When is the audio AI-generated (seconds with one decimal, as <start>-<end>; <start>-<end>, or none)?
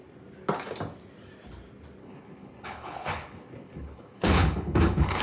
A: 2.0-5.2